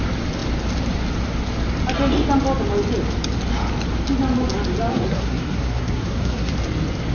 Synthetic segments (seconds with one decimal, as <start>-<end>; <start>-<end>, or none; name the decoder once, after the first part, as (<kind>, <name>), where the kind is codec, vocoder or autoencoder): 4.9-6.5 (codec, SNAC)